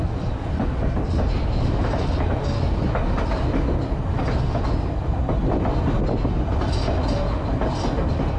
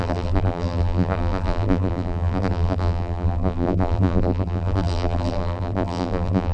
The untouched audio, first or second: first